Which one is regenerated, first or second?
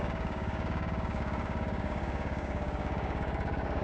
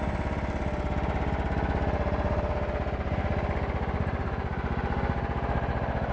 first